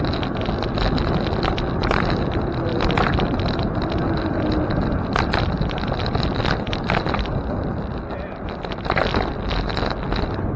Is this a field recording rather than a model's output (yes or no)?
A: yes